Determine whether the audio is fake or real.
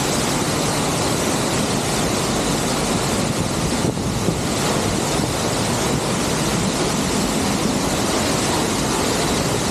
real